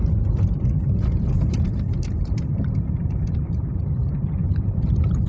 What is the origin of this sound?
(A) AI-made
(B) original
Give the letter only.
A